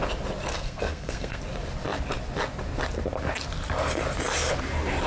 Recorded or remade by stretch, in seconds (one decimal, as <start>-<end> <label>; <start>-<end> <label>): 0.0-0.5 recorded; 0.5-1.4 remade; 1.4-5.1 recorded